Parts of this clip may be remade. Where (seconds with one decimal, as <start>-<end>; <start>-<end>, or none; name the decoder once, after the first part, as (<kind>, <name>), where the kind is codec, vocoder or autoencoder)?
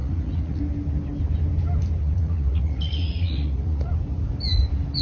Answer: 0.0-0.6 (vocoder, Vocos); 2.0-3.9